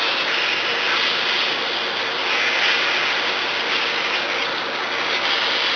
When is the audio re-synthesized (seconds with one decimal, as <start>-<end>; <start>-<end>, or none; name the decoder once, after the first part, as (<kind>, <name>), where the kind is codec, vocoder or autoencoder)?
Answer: none